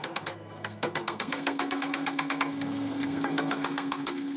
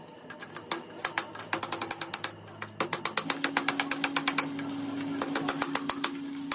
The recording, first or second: second